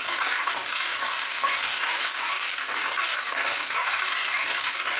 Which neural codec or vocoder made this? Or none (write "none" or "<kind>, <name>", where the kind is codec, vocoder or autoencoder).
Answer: codec, DAC